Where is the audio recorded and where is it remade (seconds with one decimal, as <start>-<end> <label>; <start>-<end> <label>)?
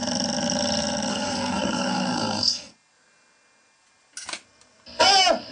0.0-1.1 recorded; 1.1-2.7 remade; 2.7-5.5 recorded